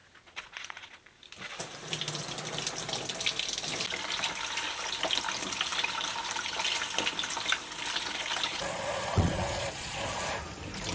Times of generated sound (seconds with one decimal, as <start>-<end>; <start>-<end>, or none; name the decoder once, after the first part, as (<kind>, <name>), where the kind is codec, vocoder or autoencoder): 0.0-1.0 (vocoder, Vocos); 8.5-10.2